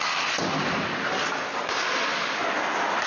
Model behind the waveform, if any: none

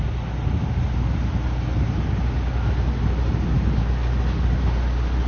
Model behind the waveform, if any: none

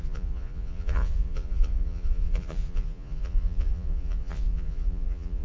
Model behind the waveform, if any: vocoder, Vocos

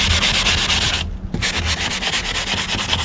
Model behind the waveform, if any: none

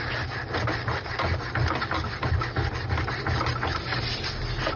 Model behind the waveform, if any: none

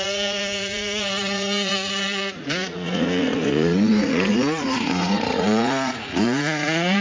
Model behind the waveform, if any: vocoder, Vocos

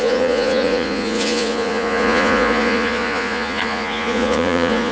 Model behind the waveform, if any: vocoder, Vocos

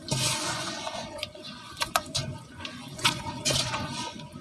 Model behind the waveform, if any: vocoder, Vocos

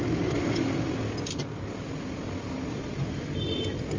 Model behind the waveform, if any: none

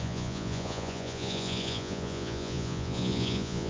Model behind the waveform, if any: vocoder, Vocos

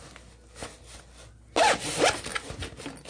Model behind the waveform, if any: none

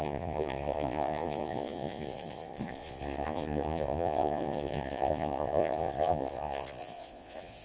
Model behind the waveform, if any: vocoder, Vocos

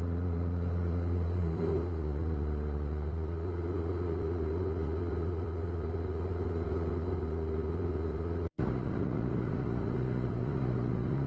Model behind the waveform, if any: vocoder, Vocos